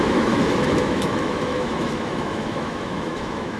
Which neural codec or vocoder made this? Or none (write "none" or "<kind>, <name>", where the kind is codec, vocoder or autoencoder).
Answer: autoencoder, DAC-VAE